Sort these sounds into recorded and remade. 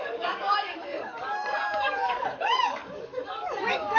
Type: remade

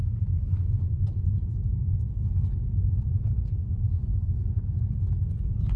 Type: recorded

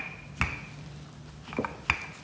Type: recorded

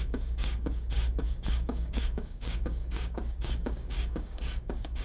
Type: remade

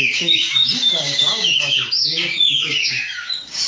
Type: remade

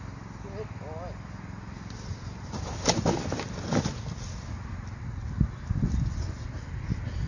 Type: recorded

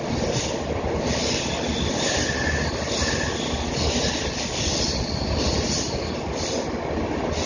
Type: recorded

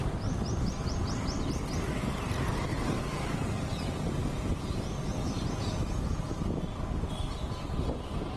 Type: recorded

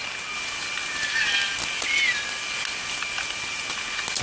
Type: recorded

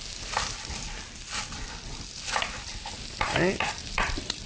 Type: recorded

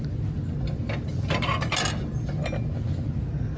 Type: recorded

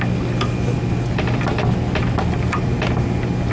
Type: recorded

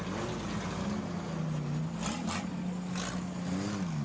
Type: recorded